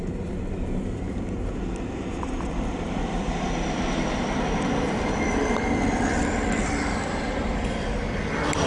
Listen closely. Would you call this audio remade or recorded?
remade